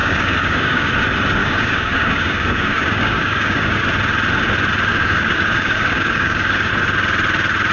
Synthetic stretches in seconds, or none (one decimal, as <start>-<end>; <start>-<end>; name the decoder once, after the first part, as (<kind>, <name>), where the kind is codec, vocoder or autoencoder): 0.0-0.9 (codec, DAC); 1.4-3.8; 4.9-6.7